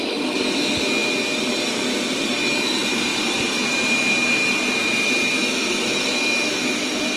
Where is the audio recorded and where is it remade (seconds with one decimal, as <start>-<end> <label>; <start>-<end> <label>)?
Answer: 0.0-5.4 recorded; 5.4-6.5 remade; 6.5-7.2 recorded

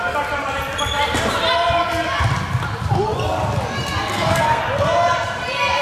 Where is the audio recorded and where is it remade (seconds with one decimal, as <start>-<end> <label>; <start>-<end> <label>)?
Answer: 0.0-4.1 recorded; 4.1-4.6 remade; 4.6-5.8 recorded

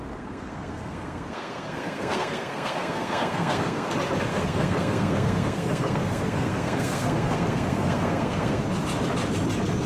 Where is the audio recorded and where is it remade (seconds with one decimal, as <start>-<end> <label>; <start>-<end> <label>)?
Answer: 0.0-3.9 remade; 3.9-4.3 recorded; 4.3-8.6 remade; 8.6-9.9 recorded

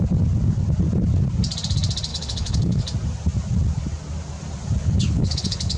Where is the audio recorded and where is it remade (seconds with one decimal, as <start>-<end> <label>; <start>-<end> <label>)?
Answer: 0.0-2.1 recorded; 2.1-2.8 remade; 2.8-4.8 recorded; 4.8-5.8 remade

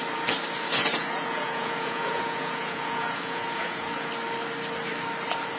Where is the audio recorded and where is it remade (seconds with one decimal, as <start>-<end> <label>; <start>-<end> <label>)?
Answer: 0.0-0.9 recorded; 0.9-4.1 remade; 4.1-5.6 recorded

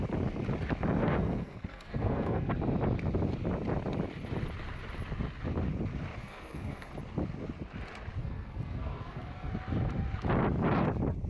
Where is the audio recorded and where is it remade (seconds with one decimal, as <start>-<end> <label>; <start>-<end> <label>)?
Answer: 0.0-1.0 recorded; 1.0-2.5 remade; 2.5-6.2 recorded; 6.2-6.9 remade; 6.9-8.2 recorded; 8.2-9.5 remade; 9.5-11.3 recorded

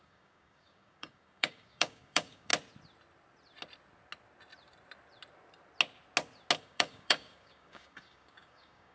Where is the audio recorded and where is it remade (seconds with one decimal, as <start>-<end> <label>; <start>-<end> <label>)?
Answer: 0.0-2.5 remade; 2.5-6.6 recorded; 6.6-8.9 remade

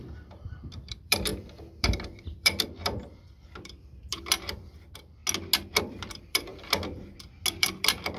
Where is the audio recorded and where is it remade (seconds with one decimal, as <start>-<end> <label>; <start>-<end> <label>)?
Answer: 0.0-5.2 remade; 5.2-5.8 recorded; 5.8-6.5 remade; 6.5-7.6 recorded; 7.6-8.2 remade